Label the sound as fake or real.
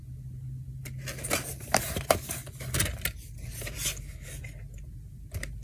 real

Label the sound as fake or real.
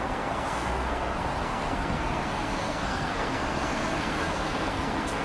fake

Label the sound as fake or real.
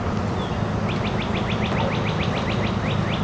real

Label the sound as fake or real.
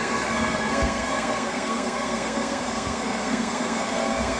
fake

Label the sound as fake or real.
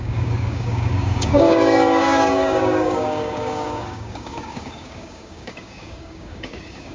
fake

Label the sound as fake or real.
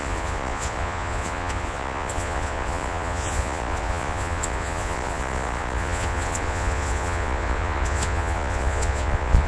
fake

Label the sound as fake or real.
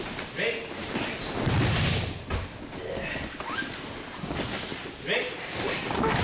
real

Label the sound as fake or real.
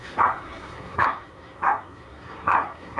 fake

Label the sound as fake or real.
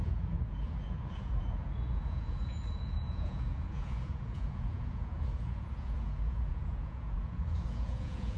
fake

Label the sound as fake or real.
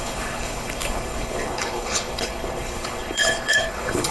fake